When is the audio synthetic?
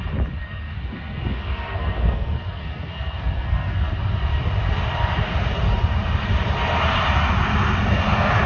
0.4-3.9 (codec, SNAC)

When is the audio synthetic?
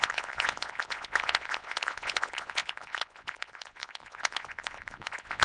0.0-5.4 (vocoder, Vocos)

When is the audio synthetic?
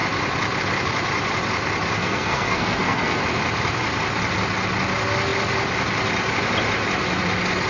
2.0-3.2 (codec, SNAC)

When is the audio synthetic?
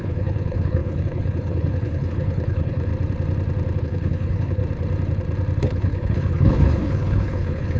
0.0-2.9 (codec, HILCodec); 3.8-4.6; 5.6-7.8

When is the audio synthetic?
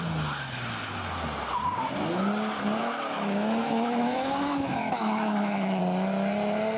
2.8-5.8 (autoencoder, DAC-VAE)